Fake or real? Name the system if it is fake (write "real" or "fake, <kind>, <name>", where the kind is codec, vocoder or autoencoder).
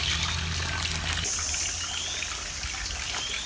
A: real